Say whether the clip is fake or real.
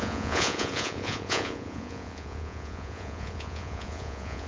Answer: fake